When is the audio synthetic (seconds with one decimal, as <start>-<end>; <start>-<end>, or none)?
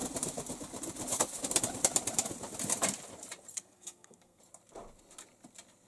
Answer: 3.5-4.4